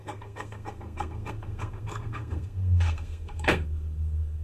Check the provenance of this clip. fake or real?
fake